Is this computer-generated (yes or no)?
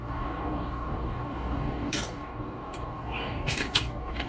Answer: yes